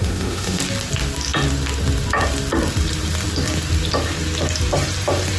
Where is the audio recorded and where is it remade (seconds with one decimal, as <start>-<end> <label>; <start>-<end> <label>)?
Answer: 0.0-0.6 remade; 0.6-5.4 recorded